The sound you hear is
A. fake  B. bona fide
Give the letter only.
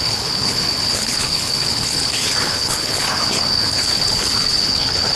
A